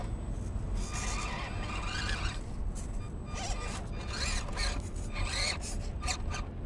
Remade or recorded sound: recorded